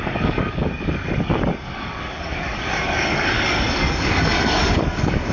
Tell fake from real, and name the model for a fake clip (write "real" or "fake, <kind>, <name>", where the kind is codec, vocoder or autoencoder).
fake, codec, DAC